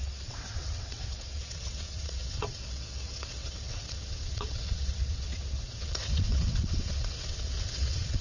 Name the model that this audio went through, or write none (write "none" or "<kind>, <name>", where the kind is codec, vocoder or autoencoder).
vocoder, WaveNeXt